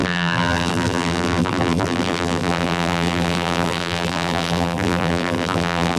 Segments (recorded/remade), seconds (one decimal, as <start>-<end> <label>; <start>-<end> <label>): 0.0-6.0 remade